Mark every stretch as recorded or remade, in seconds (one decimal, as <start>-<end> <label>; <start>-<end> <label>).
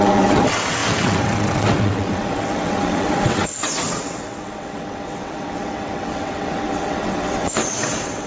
0.0-8.3 remade